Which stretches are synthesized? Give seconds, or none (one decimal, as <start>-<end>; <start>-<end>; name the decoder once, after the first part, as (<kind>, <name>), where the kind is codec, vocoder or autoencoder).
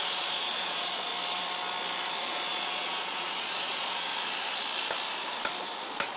0.0-1.1 (vocoder, Vocos); 2.2-4.1